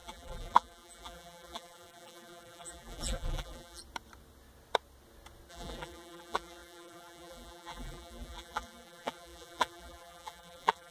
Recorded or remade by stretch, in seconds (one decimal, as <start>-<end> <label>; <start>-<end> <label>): 0.0-3.8 remade; 3.8-5.5 recorded; 5.5-10.9 remade